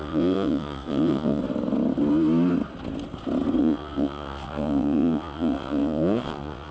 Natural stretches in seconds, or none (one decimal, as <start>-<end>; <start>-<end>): 1.4-3.6